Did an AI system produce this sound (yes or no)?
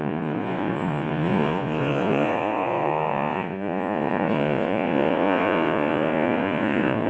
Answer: yes